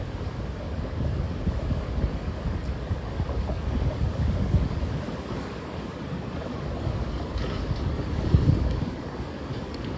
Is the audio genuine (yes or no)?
no